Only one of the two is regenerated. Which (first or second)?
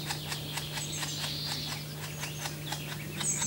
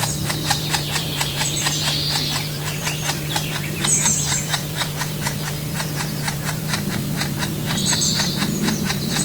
second